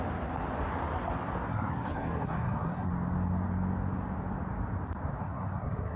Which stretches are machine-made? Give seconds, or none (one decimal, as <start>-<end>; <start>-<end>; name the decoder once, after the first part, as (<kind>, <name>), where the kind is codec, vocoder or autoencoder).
1.5-2.9 (codec, SNAC); 5.2-6.0